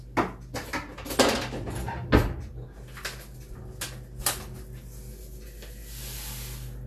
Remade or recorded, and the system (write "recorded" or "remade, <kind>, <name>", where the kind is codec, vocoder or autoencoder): recorded